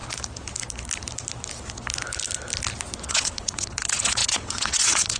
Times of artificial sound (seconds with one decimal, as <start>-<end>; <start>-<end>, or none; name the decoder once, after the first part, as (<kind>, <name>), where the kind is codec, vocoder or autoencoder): 3.1-5.2 (vocoder, WaveNeXt)